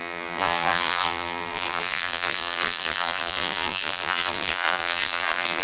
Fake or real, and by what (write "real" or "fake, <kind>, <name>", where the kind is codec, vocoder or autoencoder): fake, vocoder, BigVGAN v2